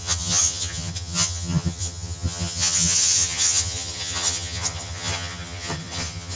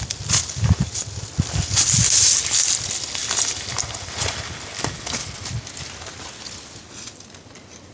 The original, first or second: second